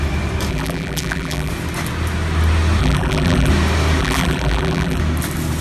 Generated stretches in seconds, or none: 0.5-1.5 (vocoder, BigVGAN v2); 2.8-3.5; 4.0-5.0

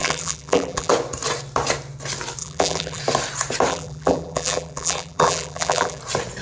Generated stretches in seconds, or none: 0.0-0.9 (vocoder, BigVGAN v2); 2.4-3.0; 3.7-6.0

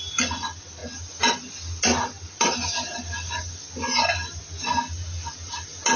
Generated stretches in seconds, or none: none

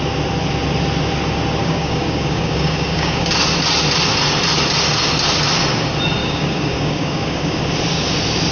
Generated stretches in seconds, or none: 1.6-3.3 (codec, DAC); 6.2-7.6